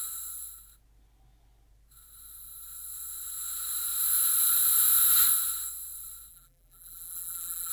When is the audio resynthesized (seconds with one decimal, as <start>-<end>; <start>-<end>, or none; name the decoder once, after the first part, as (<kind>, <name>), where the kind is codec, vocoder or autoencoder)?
6.3-7.7 (vocoder, BigVGAN v2)